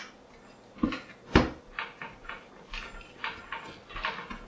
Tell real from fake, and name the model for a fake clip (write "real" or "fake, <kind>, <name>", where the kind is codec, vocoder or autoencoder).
real